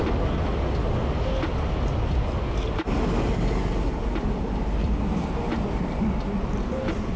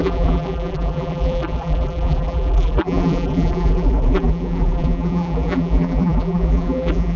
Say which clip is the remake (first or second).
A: second